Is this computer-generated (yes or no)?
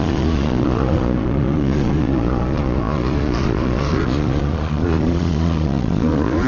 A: yes